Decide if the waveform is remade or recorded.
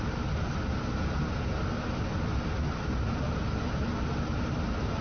recorded